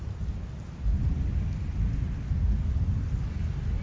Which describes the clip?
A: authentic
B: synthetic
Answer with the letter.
A